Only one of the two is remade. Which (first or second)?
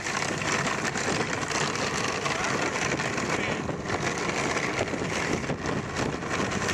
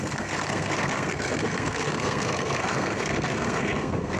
second